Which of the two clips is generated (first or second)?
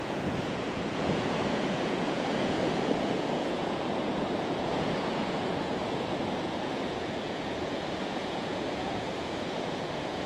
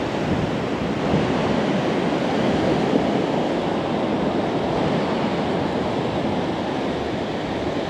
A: first